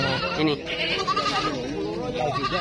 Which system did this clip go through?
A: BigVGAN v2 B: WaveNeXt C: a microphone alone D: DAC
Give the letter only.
C